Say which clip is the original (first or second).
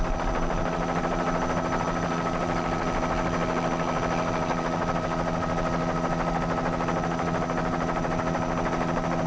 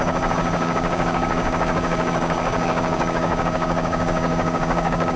first